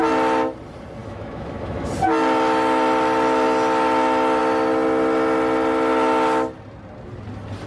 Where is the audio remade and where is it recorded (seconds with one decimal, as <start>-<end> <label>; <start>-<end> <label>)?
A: 0.0-1.0 recorded; 1.0-1.9 remade; 1.9-7.7 recorded